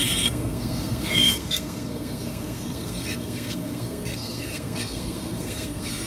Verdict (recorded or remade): remade